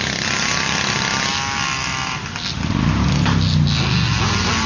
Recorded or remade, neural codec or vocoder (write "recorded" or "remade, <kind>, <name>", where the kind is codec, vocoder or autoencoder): recorded